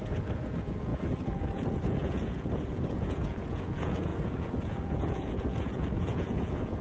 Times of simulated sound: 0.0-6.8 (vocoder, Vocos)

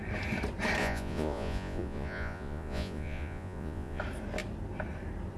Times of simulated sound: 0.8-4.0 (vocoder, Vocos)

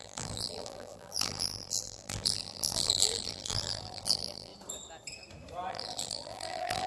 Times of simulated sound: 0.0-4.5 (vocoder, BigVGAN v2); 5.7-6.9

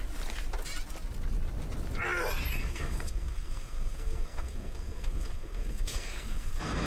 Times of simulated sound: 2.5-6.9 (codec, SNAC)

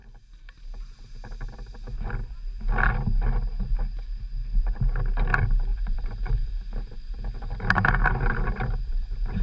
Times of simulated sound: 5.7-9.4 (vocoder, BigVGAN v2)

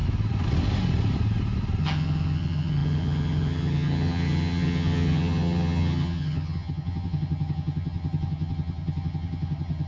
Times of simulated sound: 1.8-9.9 (vocoder, HiFi-GAN)

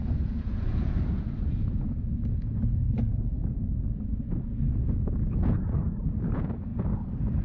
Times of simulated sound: 0.0-6.7 (vocoder, Vocos)

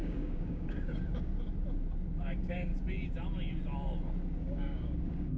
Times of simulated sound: 0.0-1.3 (codec, DAC); 2.2-2.7; 4.4-5.4